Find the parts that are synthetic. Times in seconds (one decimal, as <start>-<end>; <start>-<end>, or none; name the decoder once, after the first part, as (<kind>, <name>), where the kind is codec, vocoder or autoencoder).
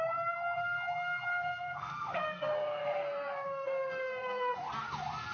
1.3-4.5 (codec, SNAC)